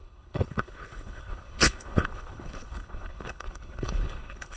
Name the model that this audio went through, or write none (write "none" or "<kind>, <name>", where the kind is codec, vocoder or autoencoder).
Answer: codec, HILCodec